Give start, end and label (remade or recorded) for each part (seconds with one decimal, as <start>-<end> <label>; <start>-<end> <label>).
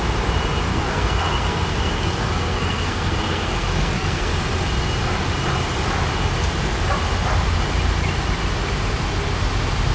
0.0-0.7 recorded; 0.7-4.3 remade; 4.3-9.9 recorded